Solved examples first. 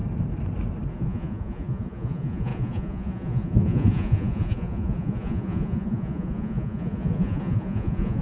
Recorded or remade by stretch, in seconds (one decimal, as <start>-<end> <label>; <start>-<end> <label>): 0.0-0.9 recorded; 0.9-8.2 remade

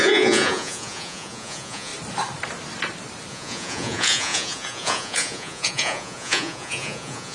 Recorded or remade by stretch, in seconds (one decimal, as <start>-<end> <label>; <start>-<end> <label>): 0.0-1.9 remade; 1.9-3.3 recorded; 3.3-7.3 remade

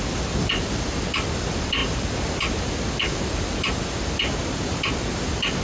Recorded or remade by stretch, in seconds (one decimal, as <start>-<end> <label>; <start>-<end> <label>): 0.0-5.6 recorded

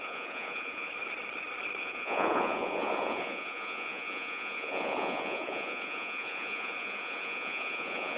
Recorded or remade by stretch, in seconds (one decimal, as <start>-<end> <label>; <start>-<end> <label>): 0.0-0.9 remade; 0.9-1.8 recorded; 1.8-8.2 remade

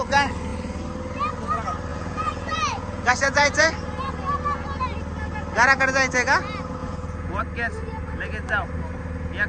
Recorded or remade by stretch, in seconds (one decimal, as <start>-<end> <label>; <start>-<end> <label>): 0.0-1.9 recorded; 1.9-3.7 remade; 3.7-6.8 recorded; 6.8-7.4 remade; 7.4-9.5 recorded

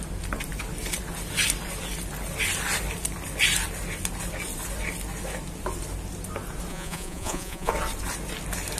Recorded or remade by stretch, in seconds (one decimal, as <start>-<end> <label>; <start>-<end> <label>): 0.0-6.7 recorded; 6.7-7.7 remade; 7.7-8.8 recorded